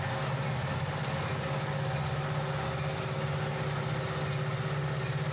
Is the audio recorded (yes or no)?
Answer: yes